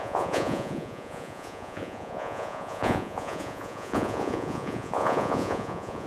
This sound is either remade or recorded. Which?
remade